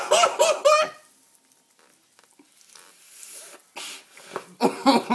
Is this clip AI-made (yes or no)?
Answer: no